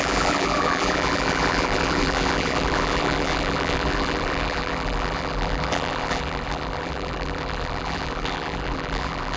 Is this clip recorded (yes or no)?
no